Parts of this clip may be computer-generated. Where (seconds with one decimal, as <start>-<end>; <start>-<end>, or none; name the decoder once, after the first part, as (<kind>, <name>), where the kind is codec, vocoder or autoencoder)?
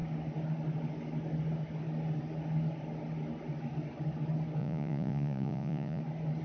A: 4.6-6.0 (vocoder, Vocos)